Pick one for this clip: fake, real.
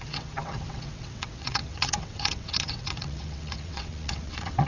fake